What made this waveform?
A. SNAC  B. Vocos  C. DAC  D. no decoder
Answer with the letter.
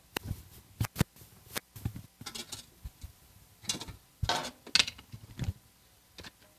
D